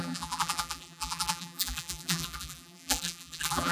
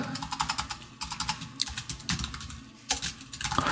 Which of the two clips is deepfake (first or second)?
first